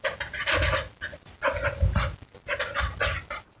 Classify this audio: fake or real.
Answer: real